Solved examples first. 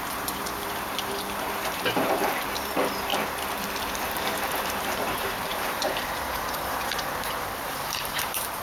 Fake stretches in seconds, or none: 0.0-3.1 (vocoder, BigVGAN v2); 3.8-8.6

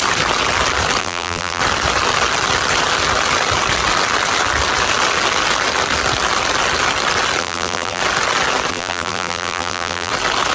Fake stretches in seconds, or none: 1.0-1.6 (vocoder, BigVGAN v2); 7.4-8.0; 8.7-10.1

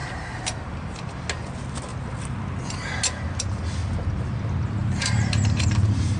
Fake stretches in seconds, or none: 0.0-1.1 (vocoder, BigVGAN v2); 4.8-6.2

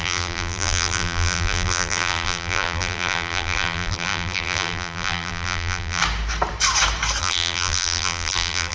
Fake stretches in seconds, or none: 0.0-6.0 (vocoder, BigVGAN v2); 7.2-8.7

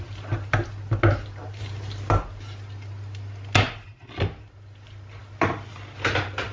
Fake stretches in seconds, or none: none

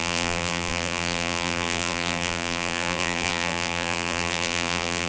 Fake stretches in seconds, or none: 0.0-5.1 (vocoder, BigVGAN v2)

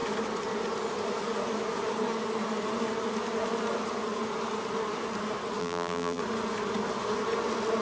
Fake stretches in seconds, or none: 5.6-6.2 (vocoder, BigVGAN v2)